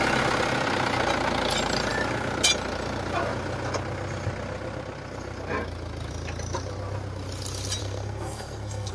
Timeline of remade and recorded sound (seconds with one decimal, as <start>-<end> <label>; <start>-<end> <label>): 0.0-7.8 recorded; 7.8-8.9 remade